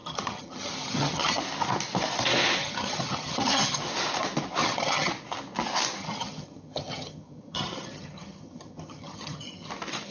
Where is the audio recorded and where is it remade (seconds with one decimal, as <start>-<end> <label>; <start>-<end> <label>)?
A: 0.0-1.4 remade; 1.4-2.6 recorded; 2.6-3.8 remade; 3.8-4.6 recorded; 4.6-5.1 remade; 5.1-6.0 recorded; 6.0-9.7 remade; 9.7-10.1 recorded